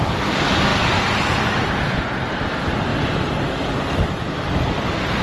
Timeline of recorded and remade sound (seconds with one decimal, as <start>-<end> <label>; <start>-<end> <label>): 0.0-5.2 recorded